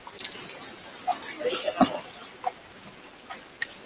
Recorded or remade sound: recorded